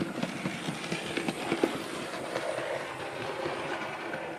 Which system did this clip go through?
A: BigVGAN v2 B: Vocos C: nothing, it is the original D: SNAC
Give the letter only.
A